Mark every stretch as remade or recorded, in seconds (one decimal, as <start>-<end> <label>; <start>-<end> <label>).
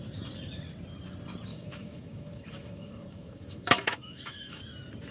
0.0-1.5 recorded; 1.5-4.6 remade; 4.6-5.1 recorded